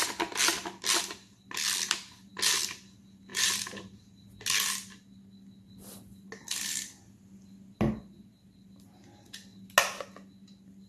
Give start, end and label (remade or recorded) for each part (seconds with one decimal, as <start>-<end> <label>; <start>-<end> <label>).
0.0-3.3 recorded; 3.3-4.0 remade; 4.0-10.9 recorded